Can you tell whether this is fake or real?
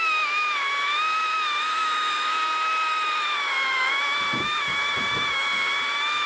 fake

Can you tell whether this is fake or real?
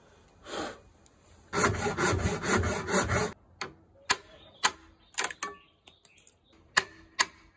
real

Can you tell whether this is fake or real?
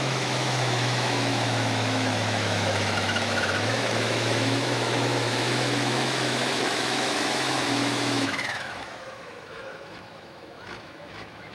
fake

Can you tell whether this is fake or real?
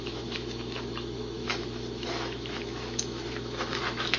fake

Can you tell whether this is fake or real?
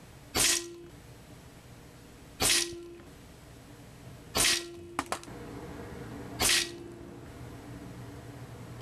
real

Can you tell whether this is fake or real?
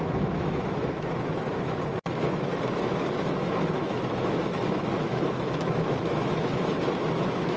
fake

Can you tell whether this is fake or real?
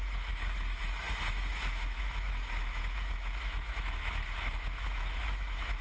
fake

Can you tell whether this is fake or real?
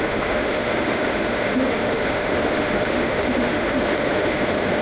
fake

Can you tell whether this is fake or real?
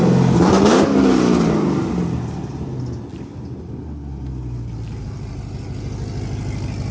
real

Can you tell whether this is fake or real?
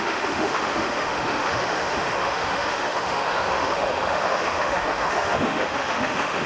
fake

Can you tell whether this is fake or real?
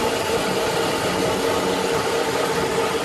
real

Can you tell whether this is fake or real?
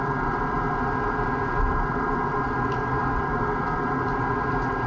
real